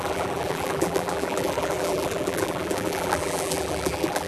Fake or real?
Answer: fake